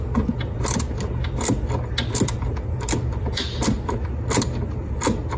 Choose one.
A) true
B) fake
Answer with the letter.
A